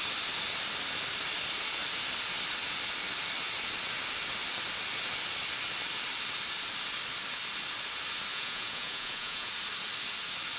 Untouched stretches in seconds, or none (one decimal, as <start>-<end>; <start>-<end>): 0.0-8.3; 9.5-10.6